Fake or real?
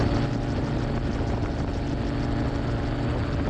real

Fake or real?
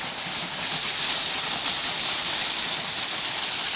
real